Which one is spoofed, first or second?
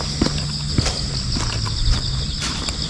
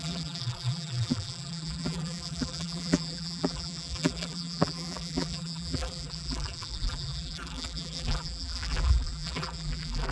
second